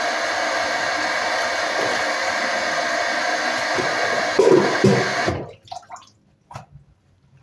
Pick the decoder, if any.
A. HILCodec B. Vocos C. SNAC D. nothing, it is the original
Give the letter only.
D